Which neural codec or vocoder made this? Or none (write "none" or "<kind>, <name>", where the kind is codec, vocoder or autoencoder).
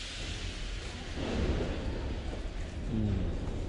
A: none